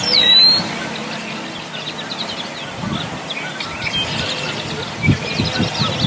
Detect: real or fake real